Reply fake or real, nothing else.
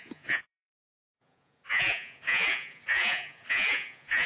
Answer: fake